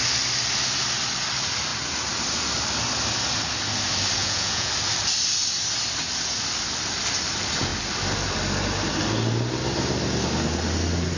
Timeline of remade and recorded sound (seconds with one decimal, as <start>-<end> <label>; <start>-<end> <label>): 0.0-4.2 recorded; 4.2-4.7 remade; 4.7-11.2 recorded